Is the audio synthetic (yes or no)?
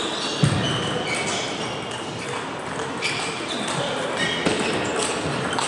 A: no